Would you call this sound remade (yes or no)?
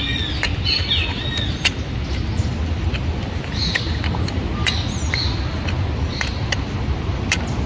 no